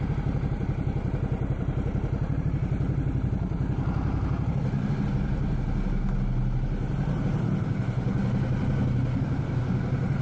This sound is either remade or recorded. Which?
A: recorded